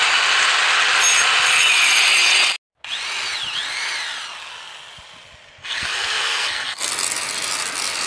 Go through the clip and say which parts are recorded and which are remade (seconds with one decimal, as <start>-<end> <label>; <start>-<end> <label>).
0.0-5.6 recorded; 5.6-6.9 remade; 6.9-8.1 recorded